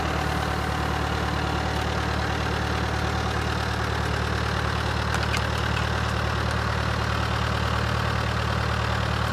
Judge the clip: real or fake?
real